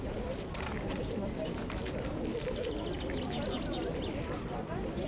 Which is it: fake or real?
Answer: fake